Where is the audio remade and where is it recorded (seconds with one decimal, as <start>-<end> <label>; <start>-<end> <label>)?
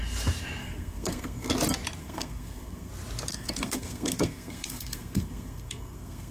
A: 0.0-0.6 recorded; 0.6-1.5 remade; 1.5-2.0 recorded; 2.0-2.9 remade; 2.9-3.3 recorded; 3.3-6.3 remade